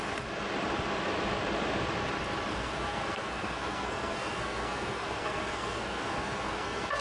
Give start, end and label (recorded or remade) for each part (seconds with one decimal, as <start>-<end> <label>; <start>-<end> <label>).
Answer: 0.0-2.5 recorded; 2.5-7.0 remade